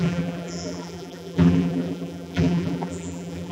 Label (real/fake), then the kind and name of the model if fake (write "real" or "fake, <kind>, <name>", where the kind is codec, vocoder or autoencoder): fake, vocoder, BigVGAN v2